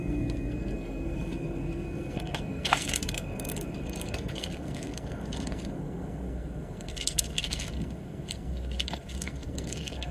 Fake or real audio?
fake